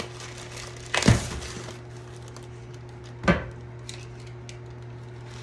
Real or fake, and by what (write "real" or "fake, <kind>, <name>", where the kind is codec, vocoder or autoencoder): real